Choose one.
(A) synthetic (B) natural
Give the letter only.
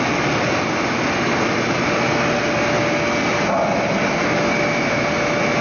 B